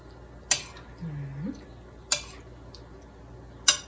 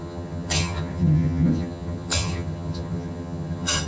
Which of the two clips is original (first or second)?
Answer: first